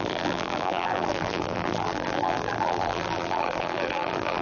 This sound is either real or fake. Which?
fake